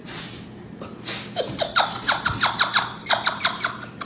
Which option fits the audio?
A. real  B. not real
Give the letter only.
A